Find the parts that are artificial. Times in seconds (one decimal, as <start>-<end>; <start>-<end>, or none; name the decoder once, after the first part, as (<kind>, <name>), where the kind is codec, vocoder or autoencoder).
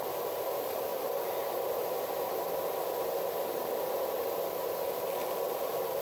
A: none